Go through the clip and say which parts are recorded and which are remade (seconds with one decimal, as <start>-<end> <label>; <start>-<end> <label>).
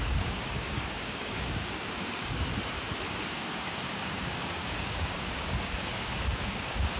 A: 0.0-2.5 remade; 2.5-3.2 recorded; 3.2-7.0 remade